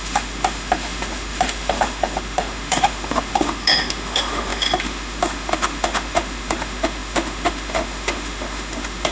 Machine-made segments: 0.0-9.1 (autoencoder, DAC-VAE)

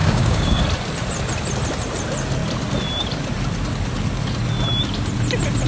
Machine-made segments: 0.0-0.6 (codec, DAC)

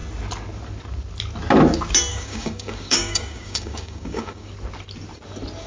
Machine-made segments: 2.1-4.5 (codec, DAC)

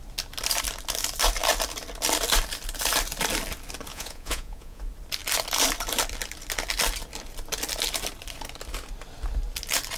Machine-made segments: 3.9-4.8 (vocoder, Vocos)